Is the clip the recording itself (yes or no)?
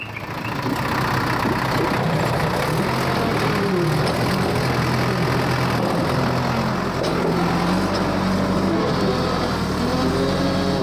yes